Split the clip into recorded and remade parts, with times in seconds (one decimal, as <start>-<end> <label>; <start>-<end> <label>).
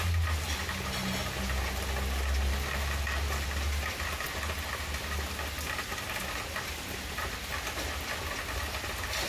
0.0-9.3 recorded